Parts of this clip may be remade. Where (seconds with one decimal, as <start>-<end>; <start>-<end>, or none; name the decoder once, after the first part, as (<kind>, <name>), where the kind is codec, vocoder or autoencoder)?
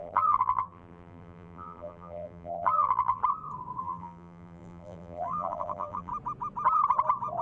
0.0-3.2 (vocoder, BigVGAN v2); 3.8-6.1